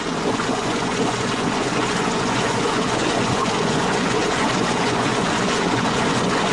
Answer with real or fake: fake